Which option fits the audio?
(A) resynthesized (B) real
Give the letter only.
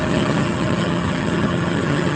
A